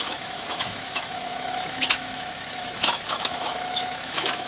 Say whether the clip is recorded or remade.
remade